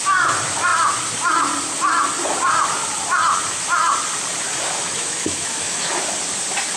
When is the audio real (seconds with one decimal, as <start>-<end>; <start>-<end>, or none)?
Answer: 0.0-4.8; 5.9-6.8